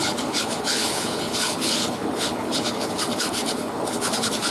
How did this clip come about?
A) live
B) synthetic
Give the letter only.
B